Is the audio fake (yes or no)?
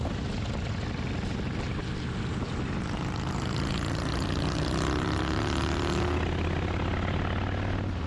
no